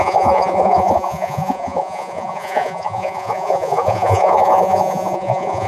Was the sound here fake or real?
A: fake